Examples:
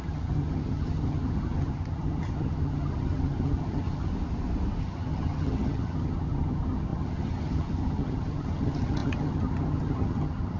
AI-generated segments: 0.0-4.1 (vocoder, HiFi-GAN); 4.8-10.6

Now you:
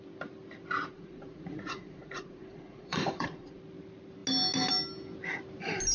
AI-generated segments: 0.9-3.6 (vocoder, Vocos)

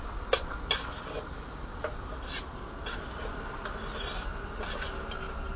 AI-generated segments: none

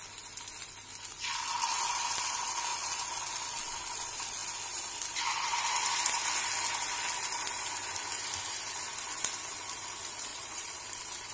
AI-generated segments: 2.7-3.3 (vocoder, Vocos); 10.3-10.8